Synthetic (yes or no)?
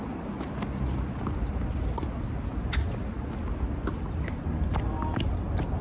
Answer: no